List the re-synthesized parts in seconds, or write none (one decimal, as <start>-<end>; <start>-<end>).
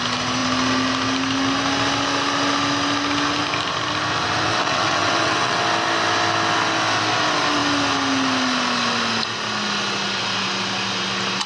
4.5-5.6